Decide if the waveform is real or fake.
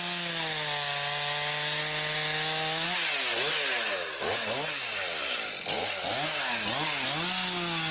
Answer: real